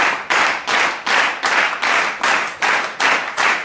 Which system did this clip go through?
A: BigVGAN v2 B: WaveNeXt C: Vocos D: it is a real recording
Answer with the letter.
D